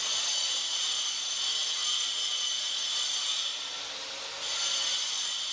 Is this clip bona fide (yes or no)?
yes